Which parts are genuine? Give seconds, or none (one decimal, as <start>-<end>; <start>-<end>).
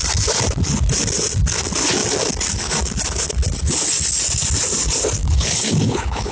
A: 0.0-5.2